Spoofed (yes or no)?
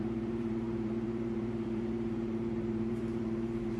yes